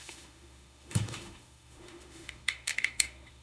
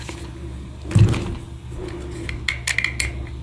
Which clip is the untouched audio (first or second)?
second